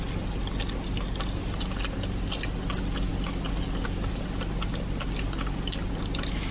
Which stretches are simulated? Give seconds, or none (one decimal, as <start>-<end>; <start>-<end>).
none